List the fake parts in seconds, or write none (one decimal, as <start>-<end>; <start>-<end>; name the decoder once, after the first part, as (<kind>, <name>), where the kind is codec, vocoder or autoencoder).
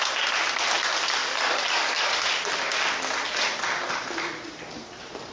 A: 1.2-2.4 (codec, DAC)